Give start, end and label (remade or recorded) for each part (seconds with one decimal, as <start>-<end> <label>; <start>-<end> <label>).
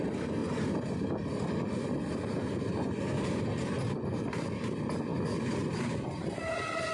0.0-0.4 recorded; 0.4-4.5 remade; 4.5-5.1 recorded; 5.1-6.9 remade